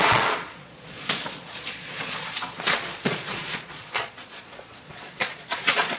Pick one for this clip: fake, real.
fake